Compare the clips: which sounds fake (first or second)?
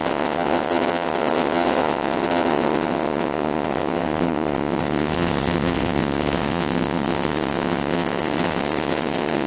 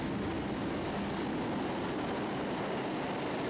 first